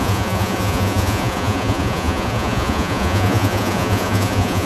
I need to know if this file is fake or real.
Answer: fake